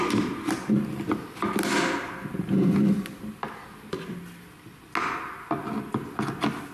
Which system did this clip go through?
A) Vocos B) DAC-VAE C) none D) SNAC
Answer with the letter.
C